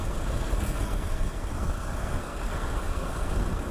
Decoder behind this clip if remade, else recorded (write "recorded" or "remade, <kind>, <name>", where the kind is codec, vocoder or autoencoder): remade, codec, SNAC